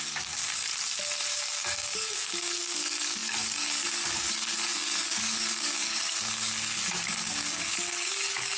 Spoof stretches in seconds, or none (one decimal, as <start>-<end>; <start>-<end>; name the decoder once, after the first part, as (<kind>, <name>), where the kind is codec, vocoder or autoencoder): 0.0-0.7 (codec, DAC); 1.3-8.6

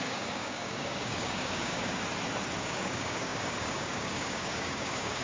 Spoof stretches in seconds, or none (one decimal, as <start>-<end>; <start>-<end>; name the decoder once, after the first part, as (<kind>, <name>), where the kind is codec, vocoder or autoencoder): 0.0-2.0 (codec, DAC); 2.6-5.2

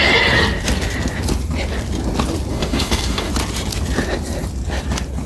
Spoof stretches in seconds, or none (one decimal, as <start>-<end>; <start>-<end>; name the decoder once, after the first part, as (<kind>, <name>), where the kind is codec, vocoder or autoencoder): 2.5-3.3 (codec, DAC)

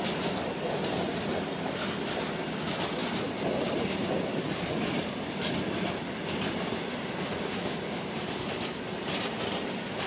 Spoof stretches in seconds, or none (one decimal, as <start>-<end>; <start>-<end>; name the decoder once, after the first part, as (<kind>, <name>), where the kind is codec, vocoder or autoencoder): none